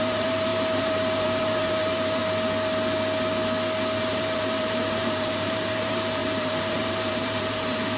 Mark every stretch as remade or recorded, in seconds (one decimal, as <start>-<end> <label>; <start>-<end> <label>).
0.0-2.2 remade; 2.2-4.0 recorded; 4.0-8.0 remade